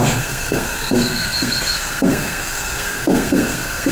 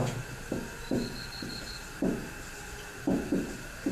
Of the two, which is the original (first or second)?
second